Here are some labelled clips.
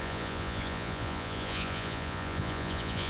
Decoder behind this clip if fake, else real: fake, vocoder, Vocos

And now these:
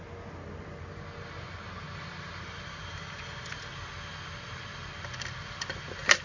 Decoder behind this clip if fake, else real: real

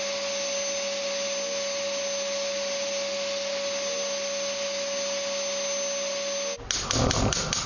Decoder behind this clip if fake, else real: real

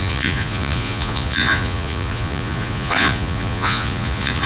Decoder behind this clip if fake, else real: fake, vocoder, Vocos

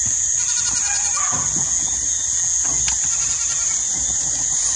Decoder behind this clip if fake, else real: real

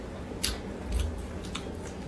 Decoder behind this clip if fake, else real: real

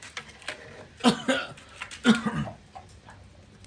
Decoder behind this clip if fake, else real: real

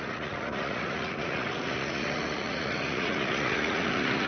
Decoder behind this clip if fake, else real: fake, vocoder, Vocos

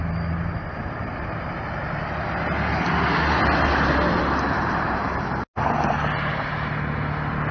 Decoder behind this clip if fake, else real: real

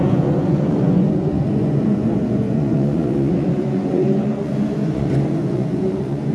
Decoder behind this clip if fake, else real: fake, vocoder, Vocos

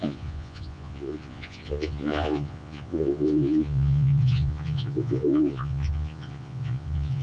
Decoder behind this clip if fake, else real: fake, vocoder, Vocos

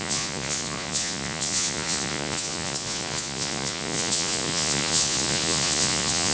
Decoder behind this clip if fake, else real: fake, vocoder, Vocos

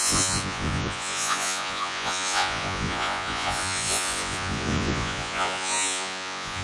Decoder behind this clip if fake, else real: fake, vocoder, Vocos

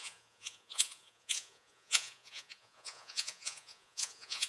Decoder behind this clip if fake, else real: fake, vocoder, Vocos